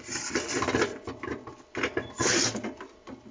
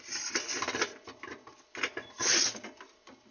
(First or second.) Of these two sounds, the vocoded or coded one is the first